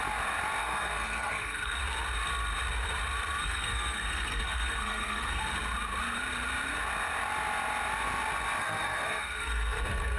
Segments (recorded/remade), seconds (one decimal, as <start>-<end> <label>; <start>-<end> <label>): 0.0-0.6 recorded; 0.6-1.8 remade; 1.8-3.4 recorded; 3.4-5.4 remade; 5.4-8.6 recorded; 8.6-10.2 remade